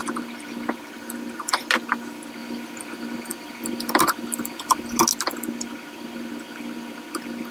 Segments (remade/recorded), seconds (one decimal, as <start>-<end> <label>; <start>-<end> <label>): 0.0-7.5 recorded